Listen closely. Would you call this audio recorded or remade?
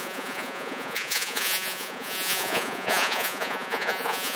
remade